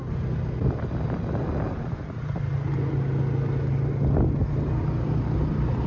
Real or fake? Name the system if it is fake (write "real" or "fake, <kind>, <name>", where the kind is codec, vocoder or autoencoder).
real